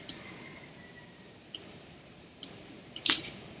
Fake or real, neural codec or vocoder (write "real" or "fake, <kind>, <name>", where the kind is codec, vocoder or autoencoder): fake, vocoder, BigVGAN v2